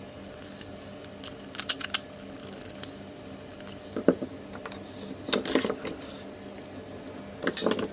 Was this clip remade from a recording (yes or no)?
no